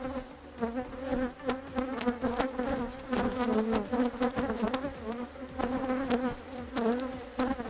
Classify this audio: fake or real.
real